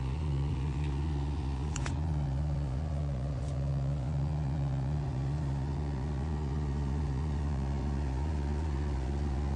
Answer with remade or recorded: remade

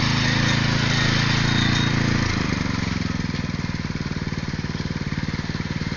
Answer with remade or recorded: recorded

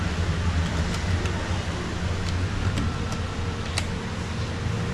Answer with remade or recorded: recorded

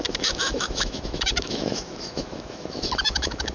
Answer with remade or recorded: remade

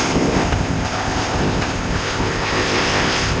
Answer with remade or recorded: remade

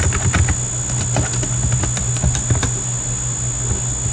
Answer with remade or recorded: recorded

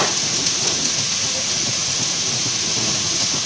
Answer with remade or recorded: remade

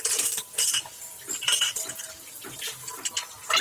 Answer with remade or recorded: remade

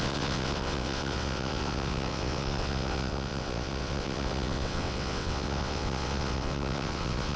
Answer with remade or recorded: remade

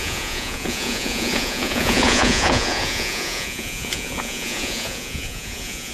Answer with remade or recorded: remade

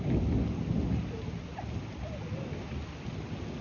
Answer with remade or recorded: recorded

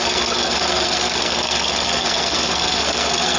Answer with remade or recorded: remade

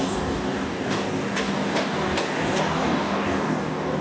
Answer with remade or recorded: remade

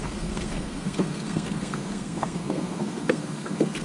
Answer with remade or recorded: remade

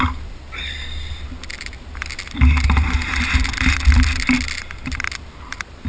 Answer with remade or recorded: recorded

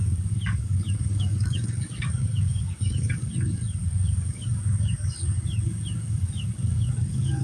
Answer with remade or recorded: remade